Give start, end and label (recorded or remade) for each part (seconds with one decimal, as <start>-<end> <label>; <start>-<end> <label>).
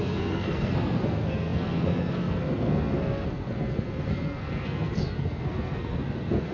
0.0-6.5 remade